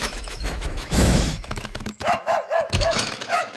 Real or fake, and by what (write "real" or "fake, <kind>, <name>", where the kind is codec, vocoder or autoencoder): fake, autoencoder, DAC-VAE